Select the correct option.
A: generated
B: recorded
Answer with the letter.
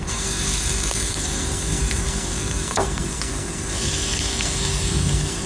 A